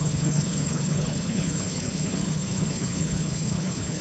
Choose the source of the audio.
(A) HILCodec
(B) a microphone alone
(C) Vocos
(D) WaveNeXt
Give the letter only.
A